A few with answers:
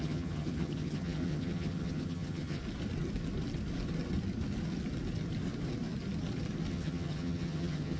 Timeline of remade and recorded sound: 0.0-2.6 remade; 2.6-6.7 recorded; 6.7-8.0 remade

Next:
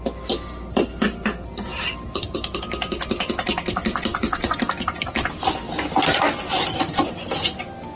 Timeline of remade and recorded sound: 0.0-8.0 recorded

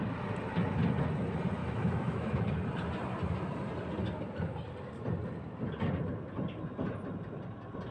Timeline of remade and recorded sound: 0.0-1.6 recorded; 1.6-2.5 remade; 2.5-7.9 recorded

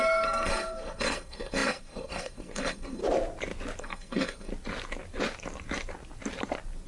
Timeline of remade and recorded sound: 0.0-3.0 remade; 3.0-3.8 recorded; 3.8-4.5 remade; 4.5-6.9 recorded

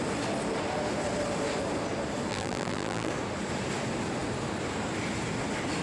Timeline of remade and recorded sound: 0.0-2.3 recorded; 2.3-3.1 remade; 3.1-5.8 recorded

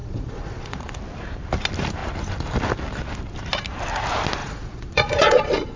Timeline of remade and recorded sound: 0.0-0.9 remade; 0.9-4.4 recorded; 4.4-5.8 remade

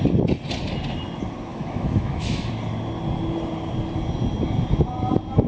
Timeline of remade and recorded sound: 0.0-1.5 recorded; 1.5-2.5 remade; 2.5-5.5 recorded

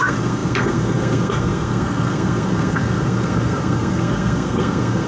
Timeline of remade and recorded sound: 0.0-5.1 remade